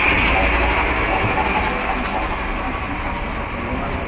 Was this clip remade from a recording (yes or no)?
no